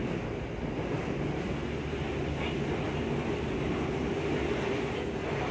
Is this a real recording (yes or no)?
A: yes